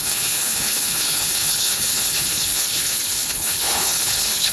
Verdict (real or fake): fake